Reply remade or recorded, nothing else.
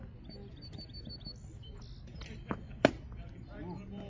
recorded